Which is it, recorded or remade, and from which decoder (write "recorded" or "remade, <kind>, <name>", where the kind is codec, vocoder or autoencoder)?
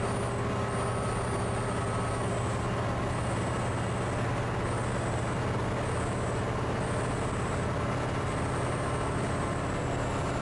recorded